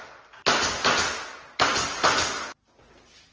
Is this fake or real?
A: real